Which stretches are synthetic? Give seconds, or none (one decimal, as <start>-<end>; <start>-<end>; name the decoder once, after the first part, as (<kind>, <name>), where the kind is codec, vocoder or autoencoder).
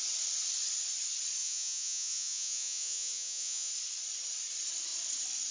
1.4-3.7 (vocoder, Vocos)